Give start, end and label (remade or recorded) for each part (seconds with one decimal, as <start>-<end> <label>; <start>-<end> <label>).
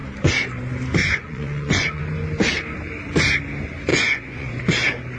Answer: 0.0-1.0 recorded; 1.0-2.0 remade; 2.0-3.9 recorded; 3.9-4.6 remade; 4.6-5.2 recorded